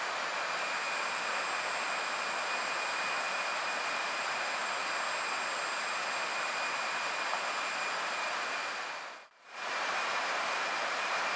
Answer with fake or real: real